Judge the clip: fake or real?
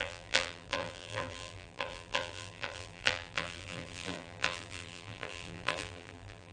fake